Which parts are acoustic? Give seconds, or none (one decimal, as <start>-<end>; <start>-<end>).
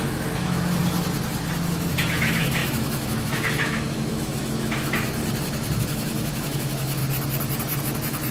0.8-1.7; 5.2-5.8; 7.0-7.8